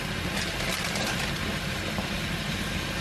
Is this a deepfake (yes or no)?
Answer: no